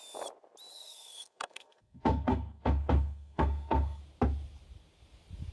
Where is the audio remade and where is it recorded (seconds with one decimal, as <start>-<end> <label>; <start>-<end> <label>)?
0.0-0.7 recorded; 0.7-4.0 remade; 4.0-5.5 recorded